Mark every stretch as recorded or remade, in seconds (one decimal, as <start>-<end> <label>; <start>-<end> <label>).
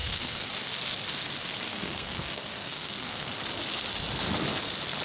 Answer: 0.0-0.5 remade; 0.5-1.7 recorded; 1.7-3.3 remade; 3.3-5.0 recorded